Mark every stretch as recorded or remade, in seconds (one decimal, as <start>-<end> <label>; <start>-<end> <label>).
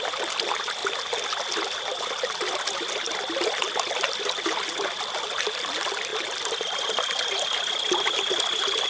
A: 0.0-8.9 recorded